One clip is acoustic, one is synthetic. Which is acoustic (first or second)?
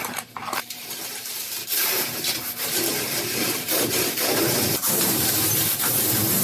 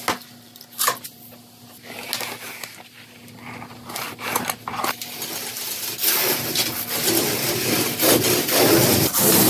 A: second